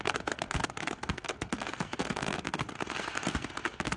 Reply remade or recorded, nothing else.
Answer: remade